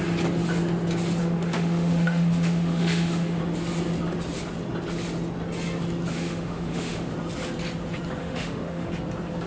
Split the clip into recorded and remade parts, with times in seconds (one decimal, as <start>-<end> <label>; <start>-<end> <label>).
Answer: 0.0-1.2 recorded; 1.2-3.4 remade; 3.4-6.1 recorded; 6.1-7.1 remade; 7.1-8.2 recorded; 8.2-8.9 remade; 8.9-9.5 recorded